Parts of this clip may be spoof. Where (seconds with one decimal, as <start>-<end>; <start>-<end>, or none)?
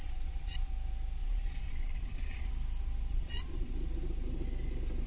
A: 0.0-0.7; 1.2-2.5; 3.1-3.7